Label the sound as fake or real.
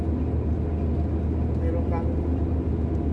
real